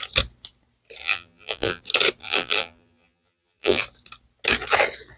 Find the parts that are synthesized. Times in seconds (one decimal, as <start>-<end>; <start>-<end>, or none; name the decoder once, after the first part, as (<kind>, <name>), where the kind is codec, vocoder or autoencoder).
1.0-1.8 (vocoder, BigVGAN v2); 2.2-3.8